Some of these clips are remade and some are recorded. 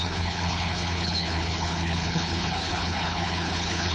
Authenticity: remade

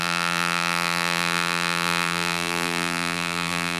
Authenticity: remade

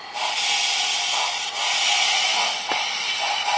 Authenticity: recorded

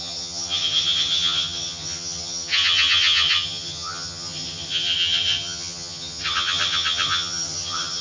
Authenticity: remade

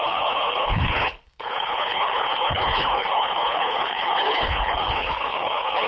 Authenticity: remade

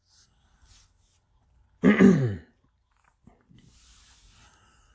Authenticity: recorded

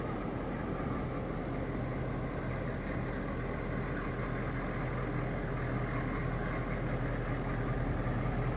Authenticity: recorded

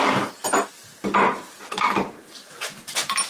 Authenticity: recorded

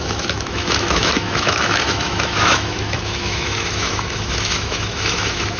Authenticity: remade